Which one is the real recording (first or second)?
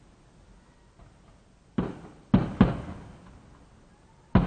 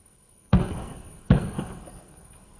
first